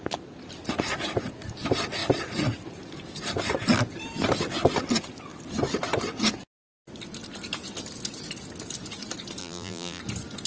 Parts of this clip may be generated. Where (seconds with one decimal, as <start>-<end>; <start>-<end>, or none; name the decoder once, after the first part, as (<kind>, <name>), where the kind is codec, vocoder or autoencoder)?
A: 9.4-10.0 (vocoder, BigVGAN v2)